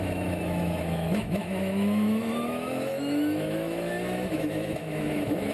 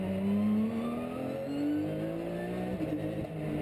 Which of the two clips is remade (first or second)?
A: first